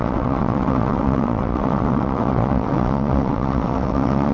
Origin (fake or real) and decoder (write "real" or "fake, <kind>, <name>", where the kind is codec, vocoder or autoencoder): fake, vocoder, WaveNeXt